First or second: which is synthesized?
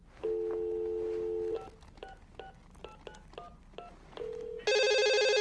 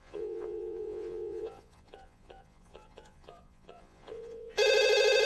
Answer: second